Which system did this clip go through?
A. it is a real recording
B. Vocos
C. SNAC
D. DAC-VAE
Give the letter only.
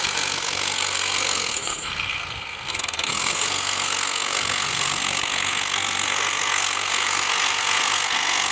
C